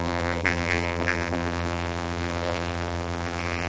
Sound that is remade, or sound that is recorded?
remade